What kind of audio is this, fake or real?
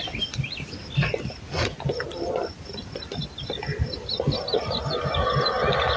real